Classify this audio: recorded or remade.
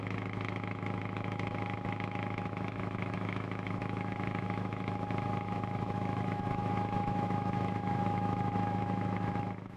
remade